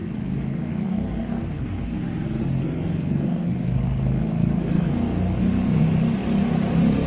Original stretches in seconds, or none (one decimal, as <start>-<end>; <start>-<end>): 2.0-2.4; 5.8-7.1